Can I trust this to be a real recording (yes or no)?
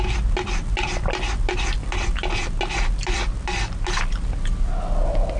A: yes